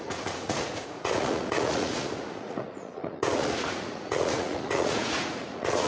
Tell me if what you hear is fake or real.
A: fake